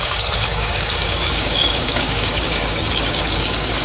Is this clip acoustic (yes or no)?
no